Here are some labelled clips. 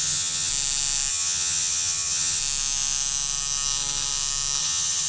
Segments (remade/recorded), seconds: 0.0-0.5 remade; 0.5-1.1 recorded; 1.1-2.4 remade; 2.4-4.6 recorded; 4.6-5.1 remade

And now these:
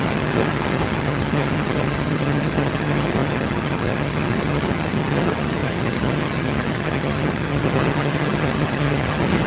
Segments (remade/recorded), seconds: 0.0-9.5 remade

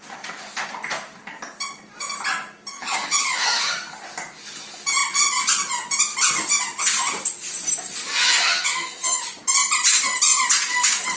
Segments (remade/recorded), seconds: 0.0-2.7 recorded; 2.7-3.7 remade; 3.7-8.1 recorded; 8.1-9.2 remade; 9.2-11.2 recorded

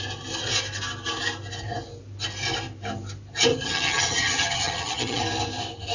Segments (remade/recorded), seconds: 0.0-3.5 recorded; 3.5-5.2 remade; 5.2-5.9 recorded

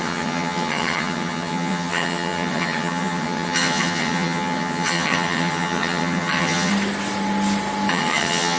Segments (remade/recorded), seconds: 0.0-6.7 remade; 6.7-7.9 recorded; 7.9-8.6 remade